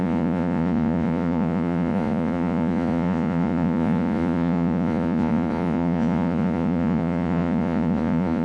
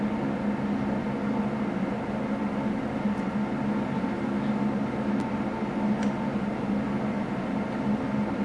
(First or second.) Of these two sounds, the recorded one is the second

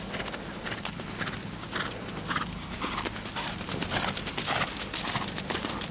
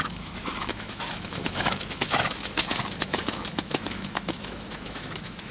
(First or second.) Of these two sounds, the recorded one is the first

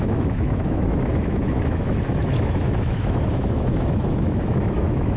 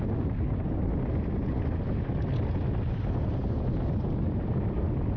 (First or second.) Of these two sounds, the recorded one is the second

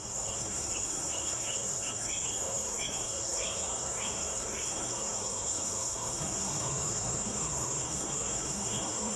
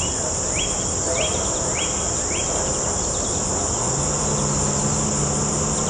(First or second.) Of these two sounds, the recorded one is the second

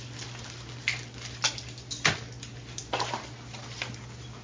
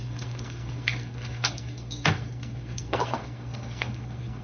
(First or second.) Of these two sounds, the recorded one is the first